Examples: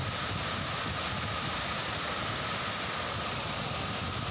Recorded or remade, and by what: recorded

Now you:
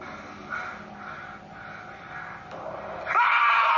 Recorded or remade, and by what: recorded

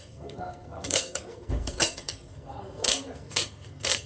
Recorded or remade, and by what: remade, codec, SNAC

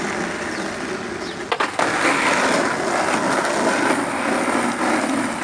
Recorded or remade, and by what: recorded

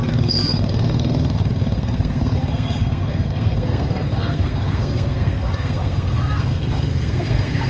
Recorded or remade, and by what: remade, codec, SNAC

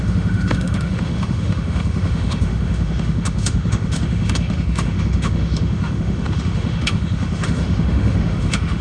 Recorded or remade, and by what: remade, autoencoder, DAC-VAE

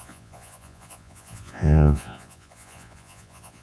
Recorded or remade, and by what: remade, vocoder, Vocos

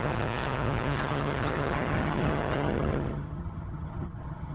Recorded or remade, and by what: remade, vocoder, HiFi-GAN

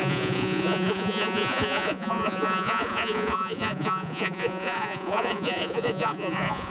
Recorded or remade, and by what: remade, vocoder, Vocos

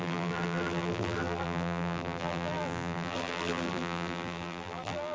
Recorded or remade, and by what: remade, vocoder, BigVGAN v2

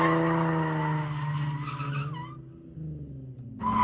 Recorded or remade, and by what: recorded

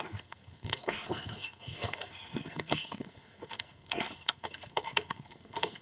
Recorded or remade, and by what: remade, codec, SNAC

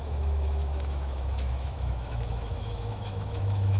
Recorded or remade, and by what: remade, autoencoder, DAC-VAE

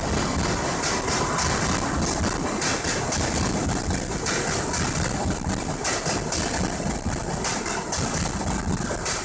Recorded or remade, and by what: recorded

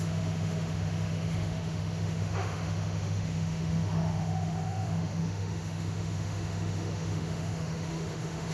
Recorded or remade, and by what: remade, autoencoder, DAC-VAE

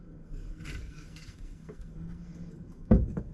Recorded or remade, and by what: remade, codec, SNAC